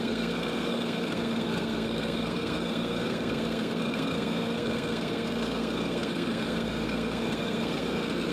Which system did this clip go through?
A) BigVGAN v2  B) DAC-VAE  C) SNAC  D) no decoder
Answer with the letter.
C